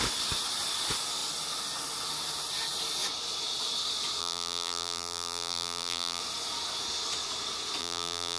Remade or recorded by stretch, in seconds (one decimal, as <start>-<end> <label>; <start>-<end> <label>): 0.0-4.2 recorded; 4.2-6.2 remade; 6.2-7.8 recorded; 7.8-8.4 remade